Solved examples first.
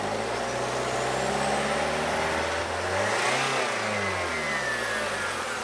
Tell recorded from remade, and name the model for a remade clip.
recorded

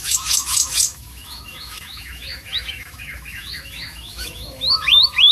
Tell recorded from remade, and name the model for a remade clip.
remade, autoencoder, DAC-VAE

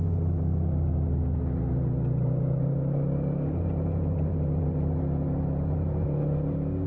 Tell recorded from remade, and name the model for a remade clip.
recorded